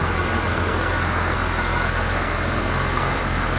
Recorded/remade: remade